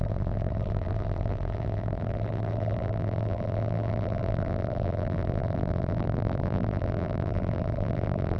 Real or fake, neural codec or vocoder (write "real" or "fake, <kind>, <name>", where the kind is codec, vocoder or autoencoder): fake, vocoder, BigVGAN v2